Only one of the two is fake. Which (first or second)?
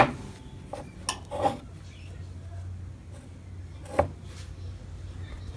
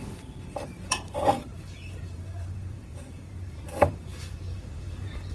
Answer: second